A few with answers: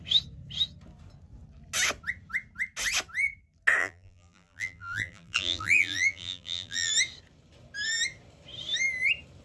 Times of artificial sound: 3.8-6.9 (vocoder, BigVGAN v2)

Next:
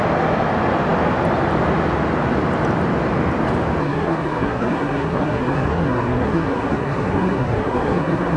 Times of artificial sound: 3.8-8.4 (codec, SNAC)

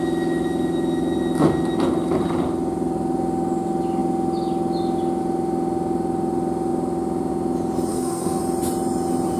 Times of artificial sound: 7.9-8.4 (codec, SNAC)

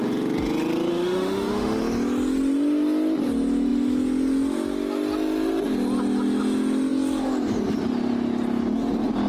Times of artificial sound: 0.9-1.8 (autoencoder, DAC-VAE)

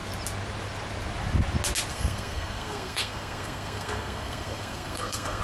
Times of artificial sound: 1.9-5.4 (codec, SNAC)

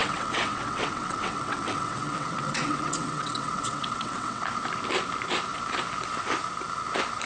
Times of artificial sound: 0.0-4.4 (vocoder, WaveNeXt)

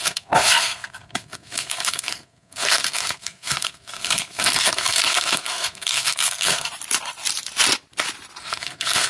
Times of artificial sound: 0.0-6.7 (codec, SNAC); 8.4-9.1